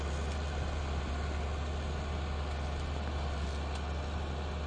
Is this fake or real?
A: real